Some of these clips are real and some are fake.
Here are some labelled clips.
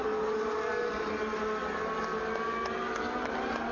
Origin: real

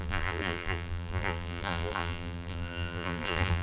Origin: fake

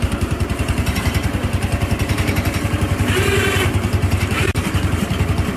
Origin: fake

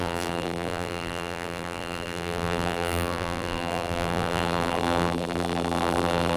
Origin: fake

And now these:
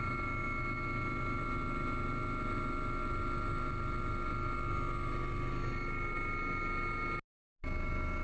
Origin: real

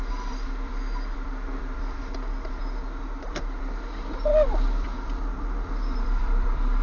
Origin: fake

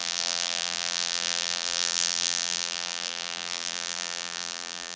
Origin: fake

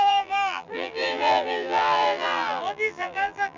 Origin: fake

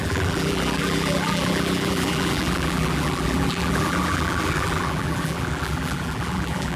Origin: fake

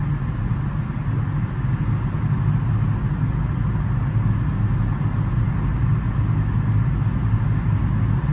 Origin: real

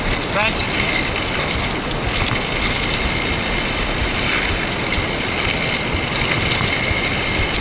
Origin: real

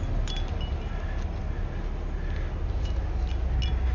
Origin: real